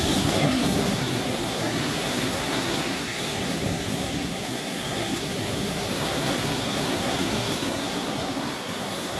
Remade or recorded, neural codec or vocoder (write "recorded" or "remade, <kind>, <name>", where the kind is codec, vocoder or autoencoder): remade, codec, SNAC